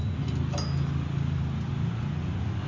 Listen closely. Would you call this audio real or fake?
real